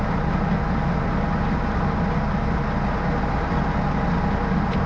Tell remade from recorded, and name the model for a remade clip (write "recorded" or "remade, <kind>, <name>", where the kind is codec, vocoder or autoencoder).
recorded